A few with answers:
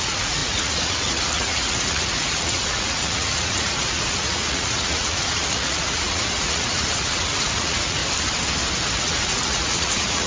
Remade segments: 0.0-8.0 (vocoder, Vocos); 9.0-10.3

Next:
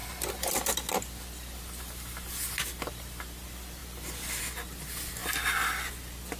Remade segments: none

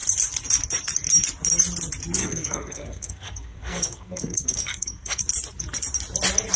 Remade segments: 2.2-5.2 (codec, SNAC)

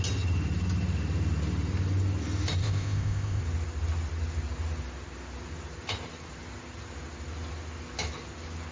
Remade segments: 2.6-3.4 (codec, ZipCodec)